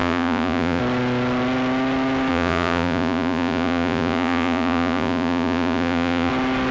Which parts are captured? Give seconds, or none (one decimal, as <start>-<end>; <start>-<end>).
0.8-2.3; 6.3-6.7